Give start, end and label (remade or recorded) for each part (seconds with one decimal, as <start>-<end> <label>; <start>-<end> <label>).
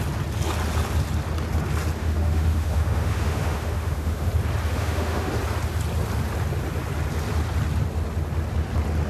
0.0-2.0 recorded; 2.0-4.3 remade; 4.3-4.7 recorded; 4.7-5.3 remade; 5.3-9.1 recorded